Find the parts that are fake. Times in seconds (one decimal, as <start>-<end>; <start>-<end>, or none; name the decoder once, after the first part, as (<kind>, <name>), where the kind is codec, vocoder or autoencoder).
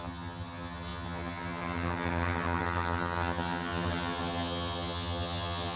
0.0-5.8 (vocoder, HiFi-GAN)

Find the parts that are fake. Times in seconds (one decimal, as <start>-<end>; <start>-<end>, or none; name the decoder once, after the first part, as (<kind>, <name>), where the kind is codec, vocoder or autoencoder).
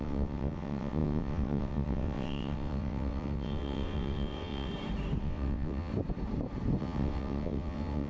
0.0-4.7 (vocoder, WaveNeXt); 5.2-5.9; 6.8-8.1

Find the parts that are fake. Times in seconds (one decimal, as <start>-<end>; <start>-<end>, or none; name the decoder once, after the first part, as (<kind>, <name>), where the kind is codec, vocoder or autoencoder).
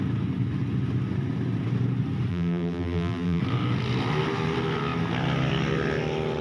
2.3-3.4 (vocoder, BigVGAN v2)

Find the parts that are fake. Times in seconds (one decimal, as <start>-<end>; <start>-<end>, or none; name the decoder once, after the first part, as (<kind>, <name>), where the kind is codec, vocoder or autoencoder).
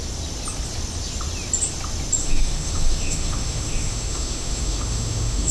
2.2-5.5 (autoencoder, DAC-VAE)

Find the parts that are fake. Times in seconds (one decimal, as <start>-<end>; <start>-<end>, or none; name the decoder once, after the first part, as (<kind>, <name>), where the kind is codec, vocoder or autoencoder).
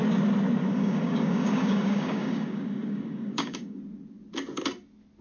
0.7-3.8 (codec, DAC)